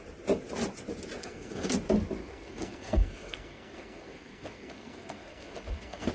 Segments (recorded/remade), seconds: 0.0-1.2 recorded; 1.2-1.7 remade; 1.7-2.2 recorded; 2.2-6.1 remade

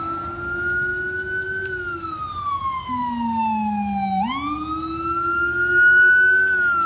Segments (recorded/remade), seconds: 0.0-6.9 recorded